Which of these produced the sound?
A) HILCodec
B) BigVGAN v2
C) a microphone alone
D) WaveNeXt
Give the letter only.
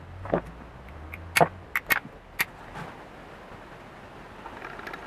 C